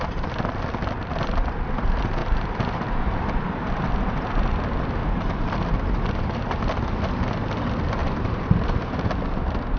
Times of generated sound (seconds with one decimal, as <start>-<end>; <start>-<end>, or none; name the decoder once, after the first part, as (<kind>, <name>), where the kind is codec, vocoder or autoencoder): 2.2-3.2 (vocoder, BigVGAN v2); 5.0-6.4; 8.0-9.1